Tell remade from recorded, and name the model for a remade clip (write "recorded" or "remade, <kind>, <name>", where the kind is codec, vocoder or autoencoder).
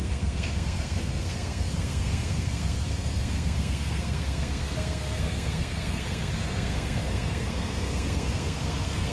remade, codec, SNAC